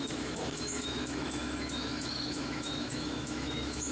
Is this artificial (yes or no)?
yes